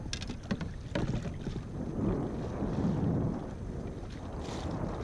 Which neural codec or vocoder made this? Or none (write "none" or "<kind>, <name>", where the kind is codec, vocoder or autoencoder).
none